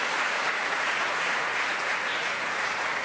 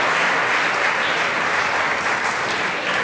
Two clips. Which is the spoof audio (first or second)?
first